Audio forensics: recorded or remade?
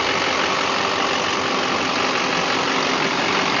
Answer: recorded